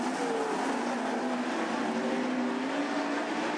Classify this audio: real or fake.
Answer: real